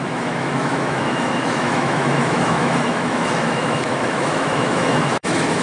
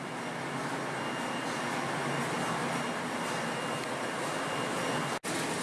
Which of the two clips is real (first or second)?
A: second